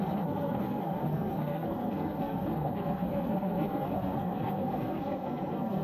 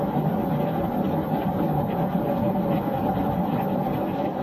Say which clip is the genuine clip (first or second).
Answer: second